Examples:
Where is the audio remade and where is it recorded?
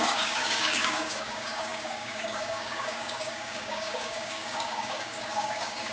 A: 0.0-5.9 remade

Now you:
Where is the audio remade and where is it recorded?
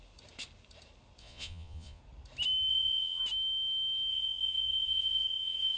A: 0.0-1.2 recorded; 1.2-2.0 remade; 2.0-2.7 recorded; 2.7-3.2 remade; 3.2-4.1 recorded; 4.1-5.8 remade